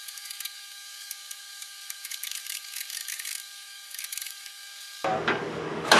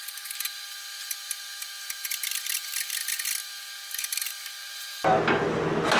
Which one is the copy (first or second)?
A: first